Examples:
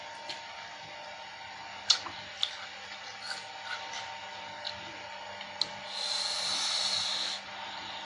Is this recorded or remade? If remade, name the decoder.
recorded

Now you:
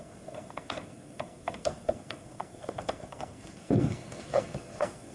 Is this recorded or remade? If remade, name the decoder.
remade, codec, SNAC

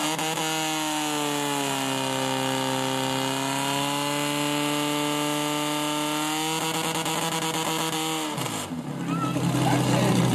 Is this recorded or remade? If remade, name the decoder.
recorded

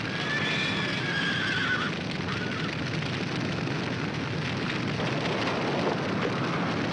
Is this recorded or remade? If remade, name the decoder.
recorded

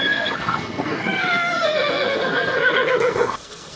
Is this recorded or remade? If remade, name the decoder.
remade, codec, SNAC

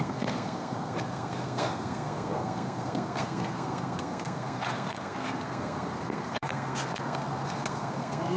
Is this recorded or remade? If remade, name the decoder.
remade, codec, SNAC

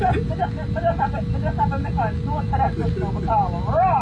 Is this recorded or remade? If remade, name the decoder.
recorded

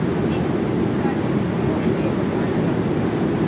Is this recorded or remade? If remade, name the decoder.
recorded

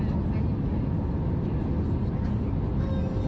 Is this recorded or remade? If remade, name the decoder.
recorded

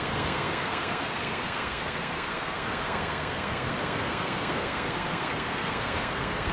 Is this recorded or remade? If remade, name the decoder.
remade, codec, SNAC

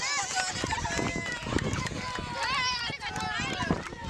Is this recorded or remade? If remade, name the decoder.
recorded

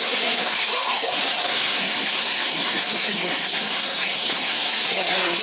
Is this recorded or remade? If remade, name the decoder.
remade, codec, SNAC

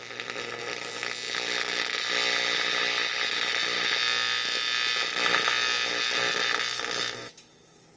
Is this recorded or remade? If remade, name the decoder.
recorded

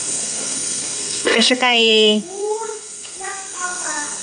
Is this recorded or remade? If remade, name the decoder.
remade, codec, SNAC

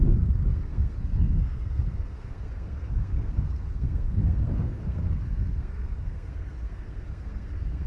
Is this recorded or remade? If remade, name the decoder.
remade, codec, SNAC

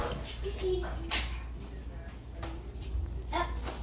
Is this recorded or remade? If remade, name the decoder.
recorded